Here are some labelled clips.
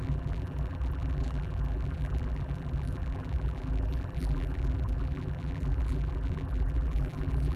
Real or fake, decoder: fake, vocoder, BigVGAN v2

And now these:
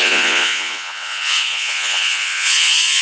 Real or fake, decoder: fake, vocoder, Vocos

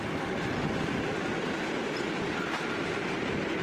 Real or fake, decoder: real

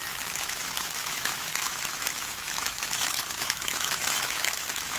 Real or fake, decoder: fake, autoencoder, DAC-VAE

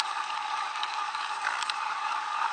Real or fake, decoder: fake, codec, DAC